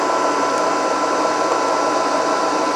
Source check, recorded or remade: recorded